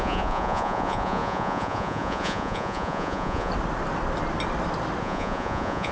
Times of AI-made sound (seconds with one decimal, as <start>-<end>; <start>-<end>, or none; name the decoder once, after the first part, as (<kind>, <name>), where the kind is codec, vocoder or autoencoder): 0.0-3.5 (vocoder, Vocos); 5.0-5.9